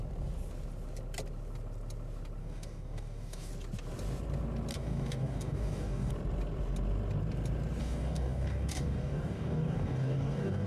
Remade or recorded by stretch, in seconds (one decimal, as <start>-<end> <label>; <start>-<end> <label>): 0.0-2.4 recorded; 2.4-3.5 remade; 3.5-4.7 recorded; 4.7-6.1 remade; 6.1-7.8 recorded; 7.8-10.7 remade